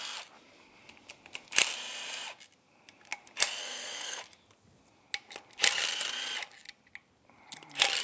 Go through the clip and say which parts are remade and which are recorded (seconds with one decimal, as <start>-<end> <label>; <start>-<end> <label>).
0.0-3.6 recorded; 3.6-4.2 remade; 4.2-8.0 recorded